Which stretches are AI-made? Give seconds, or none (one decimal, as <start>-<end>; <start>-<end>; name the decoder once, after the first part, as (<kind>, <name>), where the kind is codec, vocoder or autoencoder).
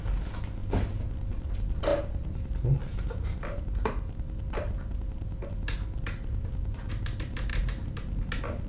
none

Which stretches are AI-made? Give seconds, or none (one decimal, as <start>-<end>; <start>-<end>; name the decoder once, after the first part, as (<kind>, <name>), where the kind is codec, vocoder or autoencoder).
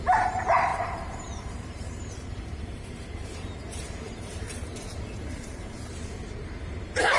0.0-7.2 (vocoder, BigVGAN v2)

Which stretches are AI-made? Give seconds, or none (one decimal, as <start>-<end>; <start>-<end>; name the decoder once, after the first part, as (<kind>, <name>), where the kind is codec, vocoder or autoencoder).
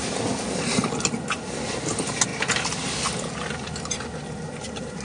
none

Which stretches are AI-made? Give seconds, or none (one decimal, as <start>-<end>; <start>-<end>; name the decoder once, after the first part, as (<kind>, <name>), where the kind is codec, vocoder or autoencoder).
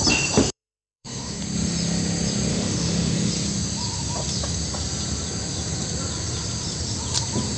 0.4-1.4 (autoencoder, DAC-VAE); 2.5-3.3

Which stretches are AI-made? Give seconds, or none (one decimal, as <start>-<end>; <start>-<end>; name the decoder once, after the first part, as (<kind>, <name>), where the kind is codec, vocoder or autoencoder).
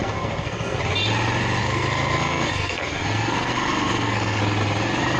0.0-0.8 (codec, SNAC); 1.6-4.4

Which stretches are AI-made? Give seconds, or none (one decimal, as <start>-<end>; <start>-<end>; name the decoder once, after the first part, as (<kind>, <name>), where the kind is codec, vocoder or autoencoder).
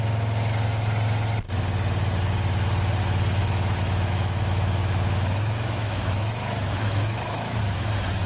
3.4-7.6 (autoencoder, DAC-VAE)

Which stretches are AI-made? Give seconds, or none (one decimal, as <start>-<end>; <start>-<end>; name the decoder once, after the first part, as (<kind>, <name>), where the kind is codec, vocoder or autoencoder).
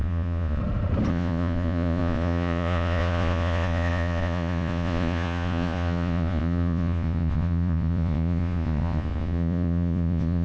0.0-0.6 (vocoder, Vocos); 1.1-10.4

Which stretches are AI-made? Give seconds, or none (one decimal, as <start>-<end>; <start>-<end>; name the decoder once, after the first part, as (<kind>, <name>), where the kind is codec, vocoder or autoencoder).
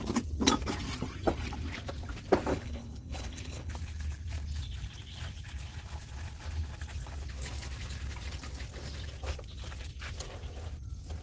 2.5-3.7 (codec, HILCodec)